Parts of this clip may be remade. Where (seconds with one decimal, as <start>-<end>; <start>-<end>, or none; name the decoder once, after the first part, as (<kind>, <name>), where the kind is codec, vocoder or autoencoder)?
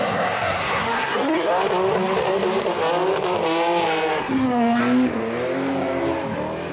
0.0-1.5 (codec, SNAC); 4.2-4.8